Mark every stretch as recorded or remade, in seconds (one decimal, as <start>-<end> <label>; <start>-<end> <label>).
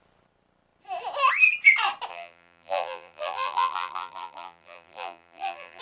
0.0-2.1 recorded; 2.1-5.8 remade